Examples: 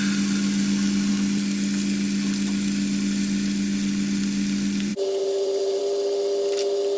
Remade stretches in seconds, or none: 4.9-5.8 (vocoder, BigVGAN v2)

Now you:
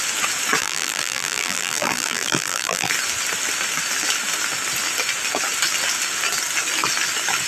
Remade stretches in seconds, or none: 0.6-2.9 (vocoder, BigVGAN v2)

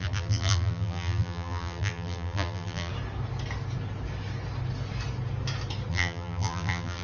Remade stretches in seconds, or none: 0.0-2.9 (vocoder, BigVGAN v2); 5.9-7.0

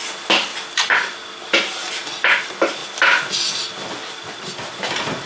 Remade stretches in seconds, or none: none

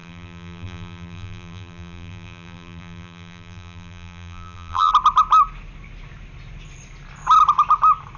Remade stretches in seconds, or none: 0.0-4.9 (vocoder, BigVGAN v2)